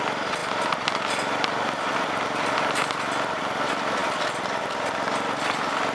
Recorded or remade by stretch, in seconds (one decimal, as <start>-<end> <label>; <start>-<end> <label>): 0.0-5.9 recorded